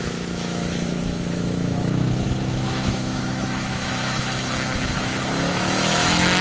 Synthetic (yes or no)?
yes